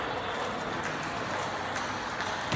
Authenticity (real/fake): real